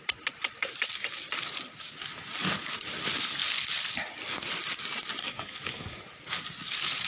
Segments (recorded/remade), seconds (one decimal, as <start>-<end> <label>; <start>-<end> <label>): 0.0-5.2 recorded; 5.2-6.0 remade; 6.0-7.1 recorded